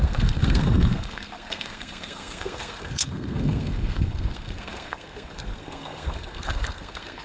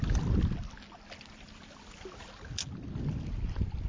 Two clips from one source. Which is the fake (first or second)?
first